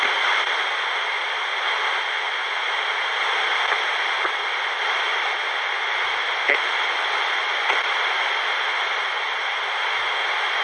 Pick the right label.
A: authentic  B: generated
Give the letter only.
A